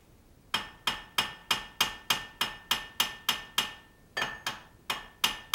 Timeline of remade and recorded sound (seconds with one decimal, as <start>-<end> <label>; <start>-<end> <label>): 0.0-5.5 recorded